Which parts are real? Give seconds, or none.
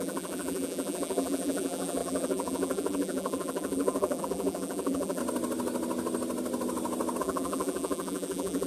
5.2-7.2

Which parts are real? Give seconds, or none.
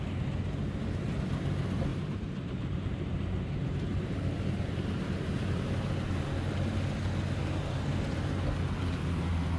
0.0-1.9; 5.9-9.6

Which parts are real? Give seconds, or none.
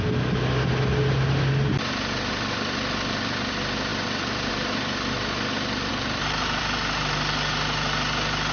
0.0-5.9; 6.6-8.5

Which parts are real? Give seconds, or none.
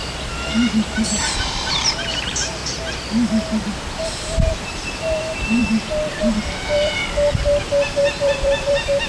0.0-0.5; 2.6-4.0; 5.6-6.2; 7.0-7.6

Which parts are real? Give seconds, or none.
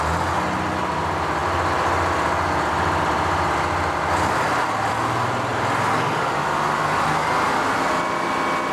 0.0-8.7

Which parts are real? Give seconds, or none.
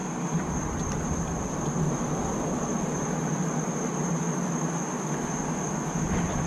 0.0-6.5